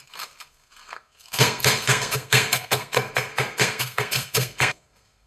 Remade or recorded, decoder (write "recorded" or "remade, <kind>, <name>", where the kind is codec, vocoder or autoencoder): remade, codec, SNAC